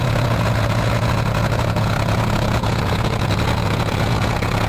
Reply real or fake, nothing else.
fake